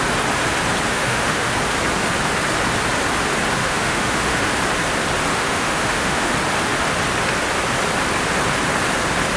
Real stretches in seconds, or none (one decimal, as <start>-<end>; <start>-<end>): 0.0-0.9; 1.5-3.6; 4.5-5.3; 6.3-9.4